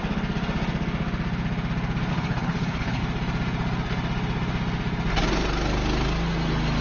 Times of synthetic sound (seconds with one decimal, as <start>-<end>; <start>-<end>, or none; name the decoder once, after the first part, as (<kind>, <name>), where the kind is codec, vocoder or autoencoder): 2.1-3.0 (codec, HILCodec)